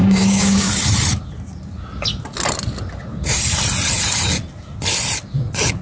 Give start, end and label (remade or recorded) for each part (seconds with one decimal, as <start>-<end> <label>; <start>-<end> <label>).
0.0-0.7 remade; 0.7-5.8 recorded